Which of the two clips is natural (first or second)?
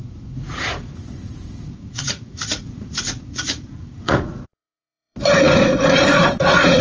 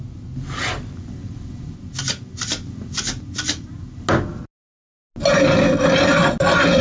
second